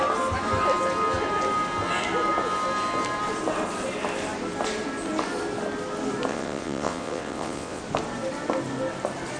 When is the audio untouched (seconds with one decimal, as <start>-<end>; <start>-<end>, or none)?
0.0-6.3; 7.8-9.4